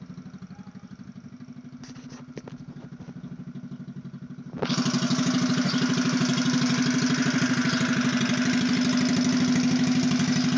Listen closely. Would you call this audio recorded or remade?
recorded